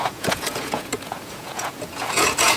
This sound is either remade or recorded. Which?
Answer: remade